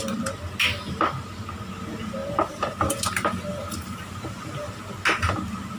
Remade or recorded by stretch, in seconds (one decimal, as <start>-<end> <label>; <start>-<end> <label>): 0.0-2.2 recorded; 2.2-4.8 remade; 4.8-5.8 recorded